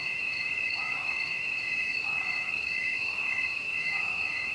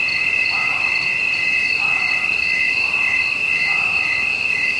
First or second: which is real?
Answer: second